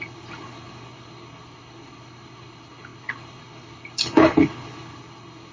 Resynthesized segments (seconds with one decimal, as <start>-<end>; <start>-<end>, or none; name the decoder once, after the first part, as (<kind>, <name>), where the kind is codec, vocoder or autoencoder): 0.0-5.5 (codec, HILCodec)